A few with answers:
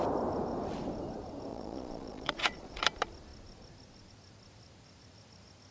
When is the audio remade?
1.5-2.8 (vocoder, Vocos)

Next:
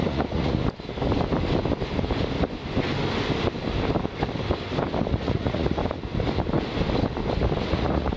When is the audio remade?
0.0-0.6 (vocoder, Vocos); 5.1-5.8; 7.6-8.2

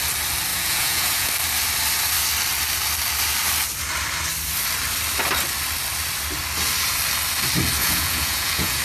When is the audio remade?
0.5-1.3 (vocoder, Vocos); 7.8-8.8

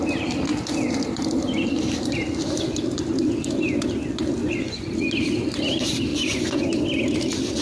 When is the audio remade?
4.4-4.9 (vocoder, Vocos); 6.1-6.8

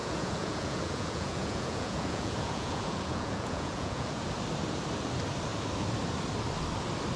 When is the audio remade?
0.0-4.3 (vocoder, Vocos)

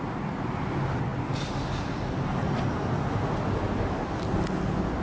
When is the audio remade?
none

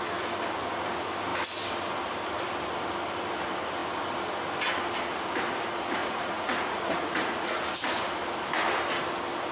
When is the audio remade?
6.0-7.6 (vocoder, Vocos)